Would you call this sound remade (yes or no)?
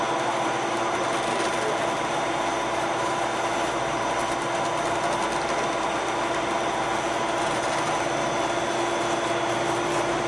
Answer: no